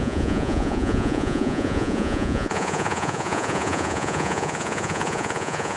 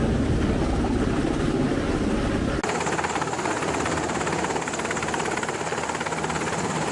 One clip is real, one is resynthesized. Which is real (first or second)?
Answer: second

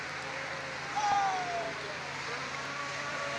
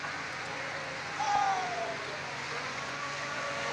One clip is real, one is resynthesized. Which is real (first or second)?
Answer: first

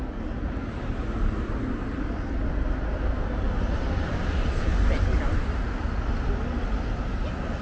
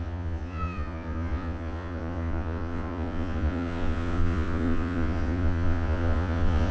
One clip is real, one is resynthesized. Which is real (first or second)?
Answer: first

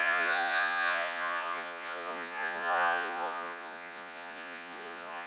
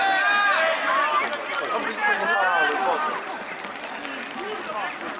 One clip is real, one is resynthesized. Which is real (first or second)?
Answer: second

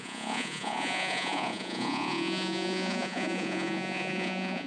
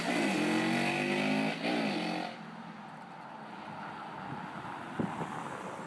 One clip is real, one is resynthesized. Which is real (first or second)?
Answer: second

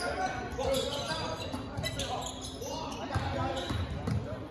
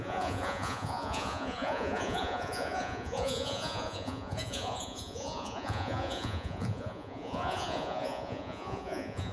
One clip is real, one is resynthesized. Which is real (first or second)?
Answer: first